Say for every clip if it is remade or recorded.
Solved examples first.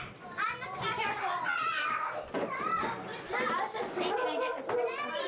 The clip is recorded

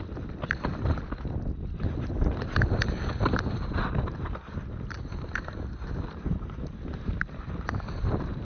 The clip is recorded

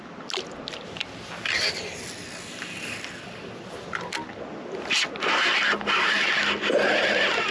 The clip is recorded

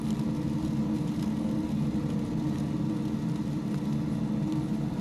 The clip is recorded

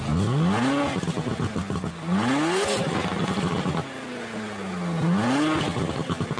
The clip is recorded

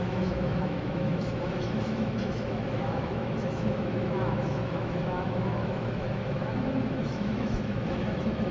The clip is remade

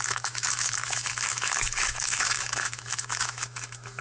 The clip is remade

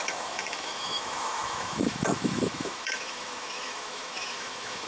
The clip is remade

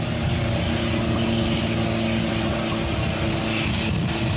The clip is recorded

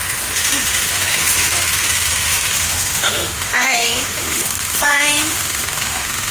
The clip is remade